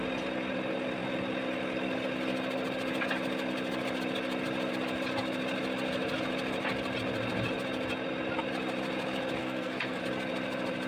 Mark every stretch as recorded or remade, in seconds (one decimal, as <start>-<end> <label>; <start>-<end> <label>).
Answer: 0.0-9.4 recorded; 9.4-10.0 remade; 10.0-10.9 recorded